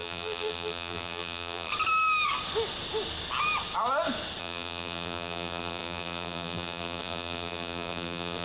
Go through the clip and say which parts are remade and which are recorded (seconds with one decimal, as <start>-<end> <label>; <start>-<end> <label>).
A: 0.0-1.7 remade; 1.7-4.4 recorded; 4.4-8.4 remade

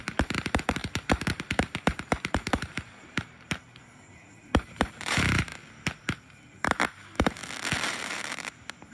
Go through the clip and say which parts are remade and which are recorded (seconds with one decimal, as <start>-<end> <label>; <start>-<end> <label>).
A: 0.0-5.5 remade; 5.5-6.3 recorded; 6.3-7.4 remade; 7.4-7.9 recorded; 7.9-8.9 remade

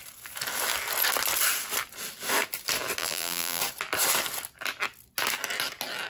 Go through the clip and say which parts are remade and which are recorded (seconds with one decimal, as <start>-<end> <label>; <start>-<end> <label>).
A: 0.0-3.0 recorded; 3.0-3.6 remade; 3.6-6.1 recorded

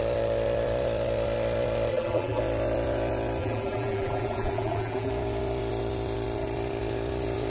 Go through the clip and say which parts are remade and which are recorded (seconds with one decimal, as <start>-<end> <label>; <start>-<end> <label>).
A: 0.0-1.9 recorded; 1.9-2.4 remade; 2.4-3.4 recorded; 3.4-5.1 remade; 5.1-7.5 recorded